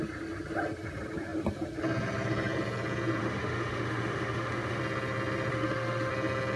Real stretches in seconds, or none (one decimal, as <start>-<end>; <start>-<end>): 0.0-3.2; 4.8-5.5; 6.1-6.6